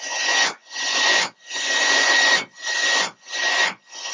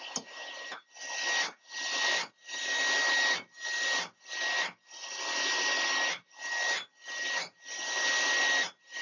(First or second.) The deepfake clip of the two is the first